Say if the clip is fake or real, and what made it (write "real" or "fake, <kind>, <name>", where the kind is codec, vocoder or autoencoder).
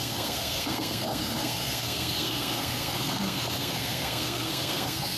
fake, codec, SNAC